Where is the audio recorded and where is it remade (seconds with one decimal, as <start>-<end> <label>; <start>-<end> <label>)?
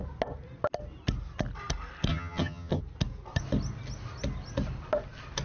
0.0-2.1 recorded; 2.1-2.8 remade; 2.8-5.4 recorded